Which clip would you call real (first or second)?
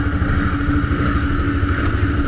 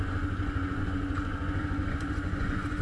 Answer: first